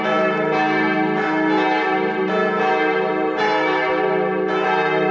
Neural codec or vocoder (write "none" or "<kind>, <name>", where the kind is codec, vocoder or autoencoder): none